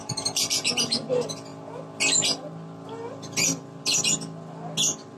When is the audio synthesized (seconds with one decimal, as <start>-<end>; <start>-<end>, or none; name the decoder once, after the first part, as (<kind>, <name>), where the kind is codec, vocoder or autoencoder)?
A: 0.0-0.7 (vocoder, BigVGAN v2)